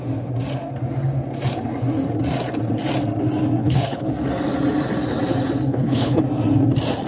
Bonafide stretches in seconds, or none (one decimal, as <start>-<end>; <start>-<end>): 0.0-3.6; 4.1-5.7; 6.2-7.1